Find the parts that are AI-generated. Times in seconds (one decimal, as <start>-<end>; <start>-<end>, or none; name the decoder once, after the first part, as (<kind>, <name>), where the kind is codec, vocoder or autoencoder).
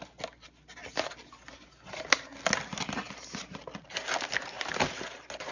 none